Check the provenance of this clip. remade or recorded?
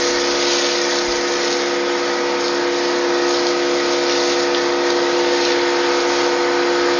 recorded